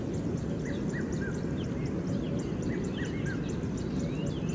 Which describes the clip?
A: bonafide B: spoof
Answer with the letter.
A